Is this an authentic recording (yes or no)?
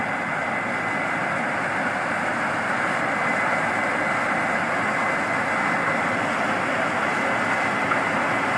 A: yes